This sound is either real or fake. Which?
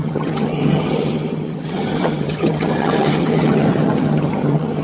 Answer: fake